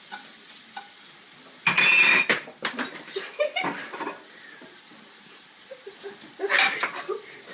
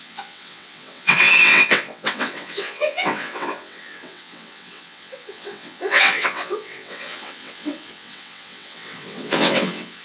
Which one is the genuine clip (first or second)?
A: first